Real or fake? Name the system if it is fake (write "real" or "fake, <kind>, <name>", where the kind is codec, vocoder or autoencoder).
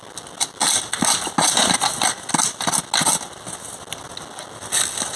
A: real